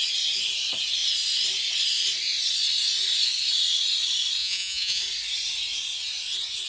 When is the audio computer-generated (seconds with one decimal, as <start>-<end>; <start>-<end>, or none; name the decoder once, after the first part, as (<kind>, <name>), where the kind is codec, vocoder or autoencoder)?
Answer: 4.4-5.0 (vocoder, Vocos)